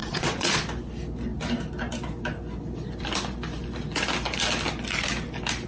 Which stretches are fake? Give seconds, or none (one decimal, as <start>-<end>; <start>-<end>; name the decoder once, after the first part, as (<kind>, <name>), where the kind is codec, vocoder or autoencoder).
0.0-0.6 (vocoder, Vocos)